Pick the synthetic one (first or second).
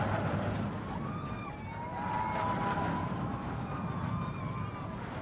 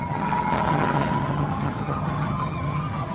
second